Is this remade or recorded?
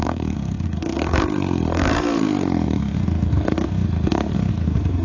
remade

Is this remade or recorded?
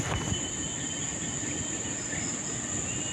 recorded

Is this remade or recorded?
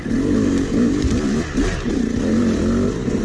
recorded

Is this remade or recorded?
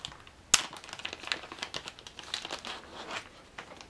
recorded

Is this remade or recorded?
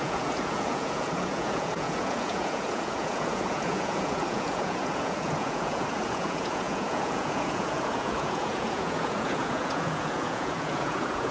remade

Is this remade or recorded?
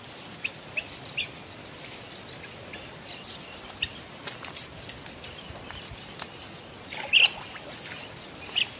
recorded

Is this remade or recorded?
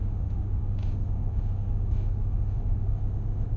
remade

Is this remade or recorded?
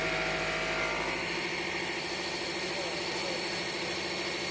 recorded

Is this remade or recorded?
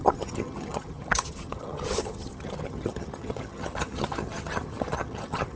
remade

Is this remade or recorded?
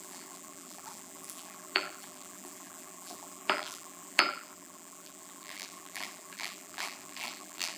remade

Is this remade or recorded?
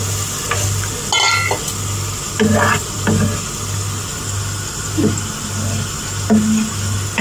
recorded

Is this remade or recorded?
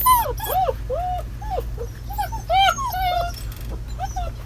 recorded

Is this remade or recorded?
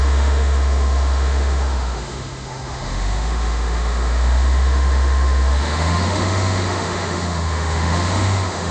remade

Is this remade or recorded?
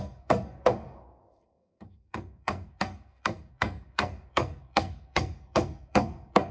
remade